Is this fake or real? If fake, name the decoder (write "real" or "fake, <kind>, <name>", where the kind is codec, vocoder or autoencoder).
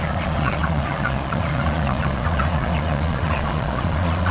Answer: fake, vocoder, Vocos